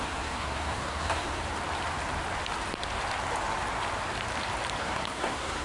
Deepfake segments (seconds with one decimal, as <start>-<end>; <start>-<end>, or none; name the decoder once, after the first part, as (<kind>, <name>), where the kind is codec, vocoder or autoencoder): 0.0-1.4 (codec, SNAC); 4.8-5.6